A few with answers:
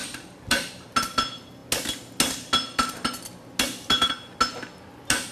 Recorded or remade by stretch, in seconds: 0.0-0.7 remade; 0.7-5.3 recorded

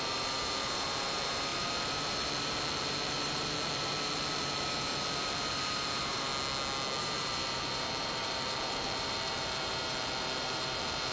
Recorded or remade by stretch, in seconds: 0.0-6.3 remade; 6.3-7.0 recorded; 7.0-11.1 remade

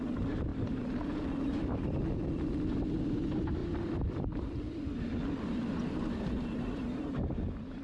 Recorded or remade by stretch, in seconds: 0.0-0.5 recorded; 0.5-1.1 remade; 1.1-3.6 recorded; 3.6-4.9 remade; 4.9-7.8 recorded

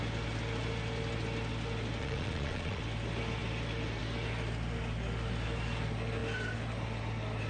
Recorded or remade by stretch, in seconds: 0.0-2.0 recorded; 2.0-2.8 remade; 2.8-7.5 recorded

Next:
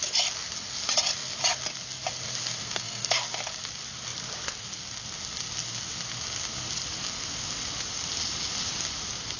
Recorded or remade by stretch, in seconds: 0.0-2.6 recorded; 2.6-3.2 remade; 3.2-9.4 recorded

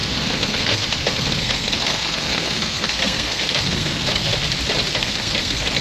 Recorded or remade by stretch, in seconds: 0.0-4.3 remade; 4.3-4.9 recorded; 4.9-5.8 remade

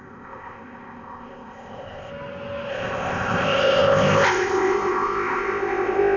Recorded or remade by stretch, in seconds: 0.0-2.1 remade; 2.1-2.7 recorded; 2.7-6.2 remade

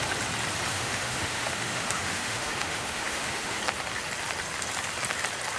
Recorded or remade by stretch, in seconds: 0.0-0.7 recorded; 0.7-3.6 remade; 3.6-5.6 recorded